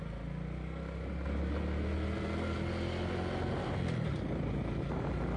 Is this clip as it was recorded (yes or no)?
yes